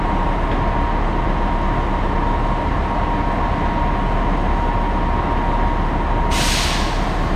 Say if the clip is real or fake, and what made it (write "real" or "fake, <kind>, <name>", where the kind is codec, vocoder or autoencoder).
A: real